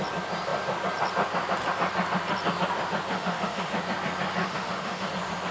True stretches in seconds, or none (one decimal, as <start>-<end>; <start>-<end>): 0.0-3.1; 3.7-4.4; 5.1-5.5